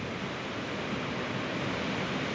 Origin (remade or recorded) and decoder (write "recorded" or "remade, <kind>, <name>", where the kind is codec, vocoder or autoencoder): recorded